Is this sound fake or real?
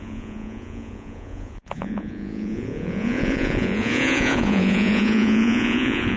fake